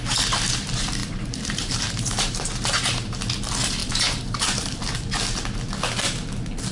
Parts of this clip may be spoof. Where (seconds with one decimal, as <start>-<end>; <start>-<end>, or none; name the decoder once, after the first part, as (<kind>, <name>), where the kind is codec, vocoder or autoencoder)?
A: 1.0-3.2 (vocoder, BigVGAN v2); 3.8-4.8